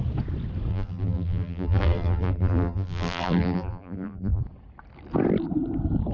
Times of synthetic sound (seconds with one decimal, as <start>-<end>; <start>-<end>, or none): 0.7-4.4